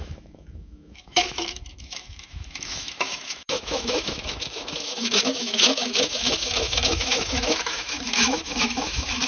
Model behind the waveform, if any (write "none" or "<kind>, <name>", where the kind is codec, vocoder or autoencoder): autoencoder, DAC-VAE